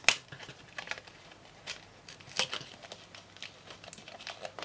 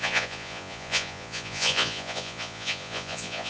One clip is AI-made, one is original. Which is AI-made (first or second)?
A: second